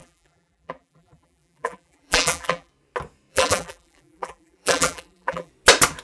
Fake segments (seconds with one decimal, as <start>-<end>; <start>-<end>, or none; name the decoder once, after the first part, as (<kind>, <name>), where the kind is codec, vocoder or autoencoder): 0.0-2.7 (vocoder, BigVGAN v2); 3.3-5.5